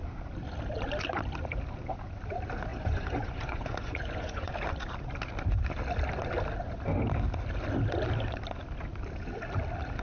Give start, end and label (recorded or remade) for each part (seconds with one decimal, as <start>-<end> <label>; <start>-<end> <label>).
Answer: 0.0-2.7 recorded; 2.7-4.5 remade; 4.5-10.0 recorded

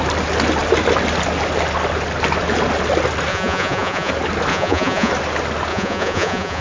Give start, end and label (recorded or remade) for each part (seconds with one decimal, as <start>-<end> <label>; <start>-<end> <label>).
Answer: 0.0-3.3 recorded; 3.3-4.1 remade; 4.1-4.5 recorded; 4.5-5.1 remade; 5.1-5.7 recorded; 5.7-6.6 remade

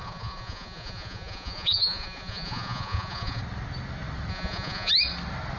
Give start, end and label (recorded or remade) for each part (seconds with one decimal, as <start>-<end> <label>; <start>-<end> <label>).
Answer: 0.0-3.4 remade; 3.4-4.3 recorded; 4.3-4.9 remade; 4.9-5.6 recorded

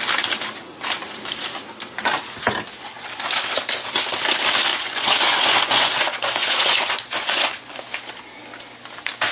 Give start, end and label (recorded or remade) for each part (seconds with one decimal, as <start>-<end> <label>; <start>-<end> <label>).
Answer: 0.0-4.7 recorded; 4.7-7.8 remade; 7.8-9.3 recorded

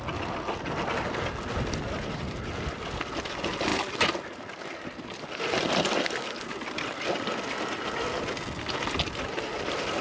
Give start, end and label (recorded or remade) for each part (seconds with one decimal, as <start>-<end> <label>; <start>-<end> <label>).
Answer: 0.0-10.0 recorded

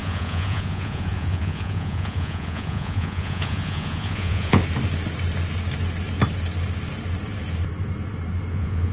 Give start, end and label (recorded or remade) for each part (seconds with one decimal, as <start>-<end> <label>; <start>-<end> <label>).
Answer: 0.0-4.6 remade; 4.6-8.5 recorded; 8.5-8.9 remade

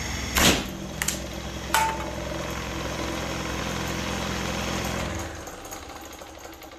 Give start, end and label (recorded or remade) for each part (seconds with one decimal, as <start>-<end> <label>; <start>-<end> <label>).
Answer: 0.0-6.8 recorded